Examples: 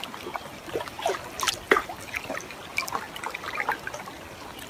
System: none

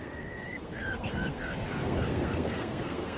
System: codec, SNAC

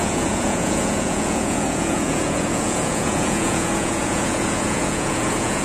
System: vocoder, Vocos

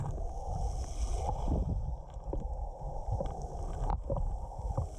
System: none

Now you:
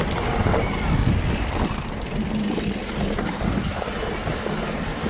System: none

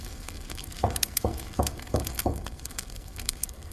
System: codec, SNAC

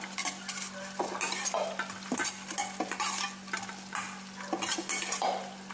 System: none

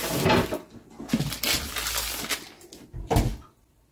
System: none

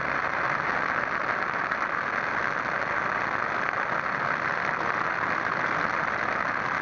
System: none